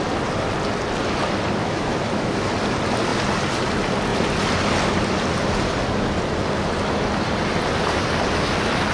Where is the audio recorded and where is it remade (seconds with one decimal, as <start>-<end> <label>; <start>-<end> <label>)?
0.0-1.6 recorded; 1.6-2.4 remade; 2.4-8.9 recorded

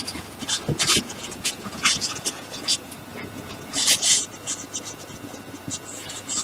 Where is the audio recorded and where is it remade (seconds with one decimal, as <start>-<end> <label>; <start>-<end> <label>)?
0.0-6.4 remade

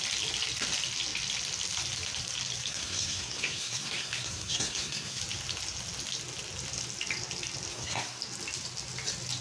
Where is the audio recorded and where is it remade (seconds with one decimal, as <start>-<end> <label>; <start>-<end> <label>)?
0.0-2.7 recorded; 2.7-5.2 remade; 5.2-7.7 recorded; 7.7-8.2 remade; 8.2-9.4 recorded

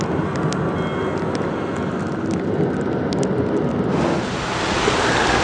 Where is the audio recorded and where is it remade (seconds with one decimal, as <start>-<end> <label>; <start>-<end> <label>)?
0.0-5.4 recorded

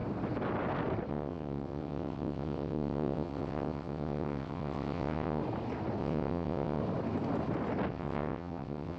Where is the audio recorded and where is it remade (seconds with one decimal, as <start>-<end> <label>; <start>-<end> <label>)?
0.0-1.1 recorded; 1.1-5.4 remade; 5.4-6.0 recorded; 6.0-6.8 remade; 6.8-7.9 recorded; 7.9-9.0 remade

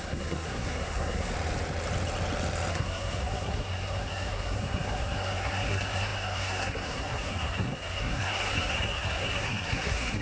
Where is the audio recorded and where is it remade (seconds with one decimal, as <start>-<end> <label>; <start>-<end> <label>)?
0.0-1.3 remade; 1.3-2.7 recorded; 2.7-10.2 remade

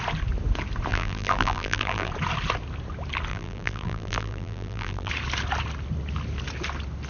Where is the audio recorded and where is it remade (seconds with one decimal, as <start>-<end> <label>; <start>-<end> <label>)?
0.0-0.9 recorded; 0.9-2.1 remade; 2.1-3.3 recorded; 3.3-5.1 remade; 5.1-7.1 recorded